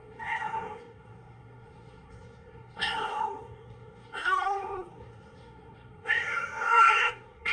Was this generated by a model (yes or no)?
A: yes